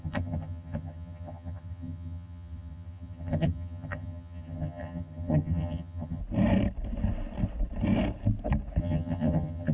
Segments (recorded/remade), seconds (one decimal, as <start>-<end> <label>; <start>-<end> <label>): 0.0-6.2 remade; 6.2-8.8 recorded; 8.8-9.7 remade